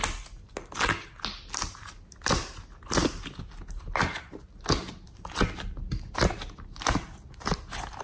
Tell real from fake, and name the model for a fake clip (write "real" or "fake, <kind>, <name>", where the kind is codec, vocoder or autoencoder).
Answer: real